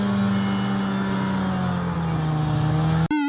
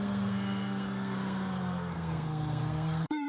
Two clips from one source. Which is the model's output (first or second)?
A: second